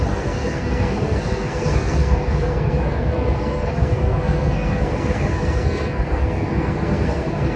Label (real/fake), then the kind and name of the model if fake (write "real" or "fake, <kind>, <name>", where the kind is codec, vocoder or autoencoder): fake, codec, SNAC